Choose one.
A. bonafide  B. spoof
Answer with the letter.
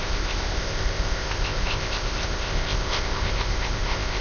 B